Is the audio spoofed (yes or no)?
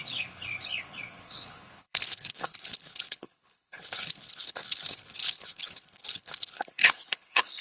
yes